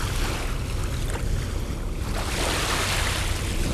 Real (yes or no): yes